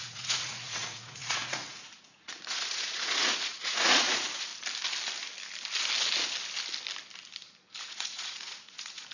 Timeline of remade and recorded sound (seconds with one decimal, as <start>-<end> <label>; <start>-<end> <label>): 0.0-4.5 remade; 4.5-7.8 recorded; 7.8-9.1 remade